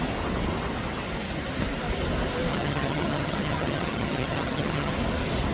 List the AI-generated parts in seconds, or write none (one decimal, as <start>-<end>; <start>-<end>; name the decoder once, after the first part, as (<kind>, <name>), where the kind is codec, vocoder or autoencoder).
2.5-4.9 (vocoder, HiFi-GAN)